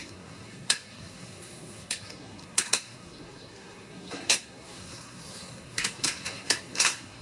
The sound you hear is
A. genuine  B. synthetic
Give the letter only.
B